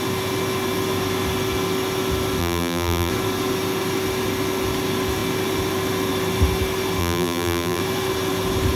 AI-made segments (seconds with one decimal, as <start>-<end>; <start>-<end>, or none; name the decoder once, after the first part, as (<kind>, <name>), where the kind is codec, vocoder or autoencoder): 2.4-3.1 (vocoder, BigVGAN v2); 7.0-7.8